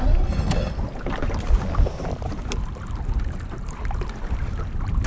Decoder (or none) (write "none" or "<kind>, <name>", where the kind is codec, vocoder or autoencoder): none